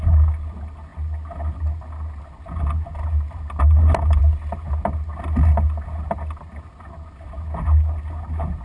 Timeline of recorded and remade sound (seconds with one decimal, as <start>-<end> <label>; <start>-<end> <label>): 0.0-8.6 recorded

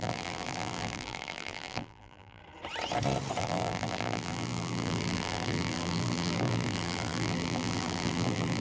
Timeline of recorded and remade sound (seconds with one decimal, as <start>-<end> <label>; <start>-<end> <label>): 0.0-2.4 remade; 2.4-3.4 recorded; 3.4-8.6 remade

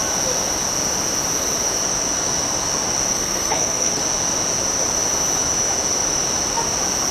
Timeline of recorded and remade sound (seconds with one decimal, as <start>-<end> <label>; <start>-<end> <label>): 0.0-3.1 recorded; 3.1-4.0 remade; 4.0-7.1 recorded

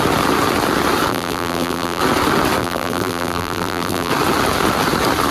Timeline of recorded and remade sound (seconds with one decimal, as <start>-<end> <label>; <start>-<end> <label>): 0.0-1.1 recorded; 1.1-2.0 remade; 2.0-2.6 recorded; 2.6-4.1 remade; 4.1-5.3 recorded